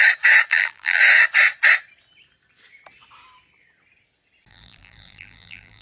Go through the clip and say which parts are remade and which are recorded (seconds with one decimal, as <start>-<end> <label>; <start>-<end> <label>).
0.0-0.5 recorded; 0.5-1.0 remade; 1.0-4.5 recorded; 4.5-5.8 remade